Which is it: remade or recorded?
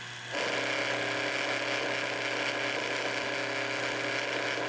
recorded